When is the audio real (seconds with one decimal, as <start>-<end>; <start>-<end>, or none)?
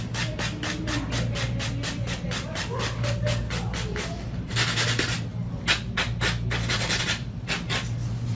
0.0-8.4